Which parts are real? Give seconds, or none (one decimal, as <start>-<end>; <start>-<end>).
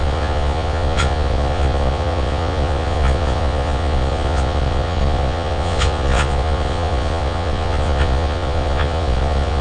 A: none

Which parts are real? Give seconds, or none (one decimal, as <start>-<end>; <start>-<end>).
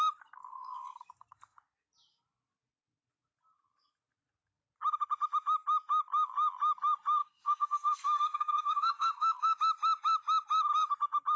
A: 0.0-0.5; 1.0-7.2; 9.6-11.4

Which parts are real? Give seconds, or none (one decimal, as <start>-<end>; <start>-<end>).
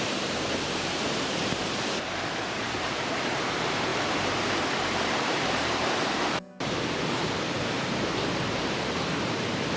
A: none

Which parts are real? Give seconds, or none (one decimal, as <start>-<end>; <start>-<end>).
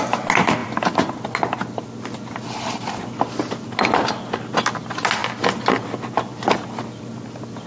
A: 0.0-7.7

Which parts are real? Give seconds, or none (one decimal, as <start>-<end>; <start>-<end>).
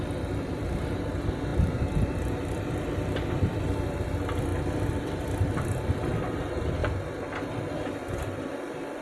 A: 6.8-7.6